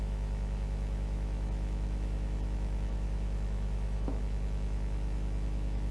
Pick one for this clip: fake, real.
fake